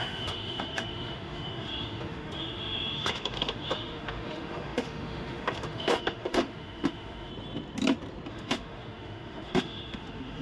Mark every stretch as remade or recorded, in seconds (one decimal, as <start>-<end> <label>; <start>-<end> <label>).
0.0-7.3 remade; 7.3-8.3 recorded; 8.3-10.4 remade